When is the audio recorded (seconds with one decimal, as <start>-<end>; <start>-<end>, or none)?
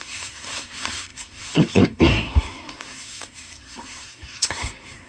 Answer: none